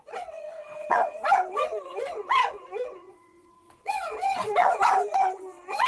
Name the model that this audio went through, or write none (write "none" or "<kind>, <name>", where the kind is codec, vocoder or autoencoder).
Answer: vocoder, WaveNeXt